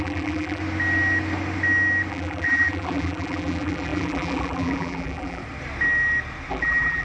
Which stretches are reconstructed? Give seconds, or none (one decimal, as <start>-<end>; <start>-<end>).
0.0-0.6; 2.1-5.4; 6.5-7.0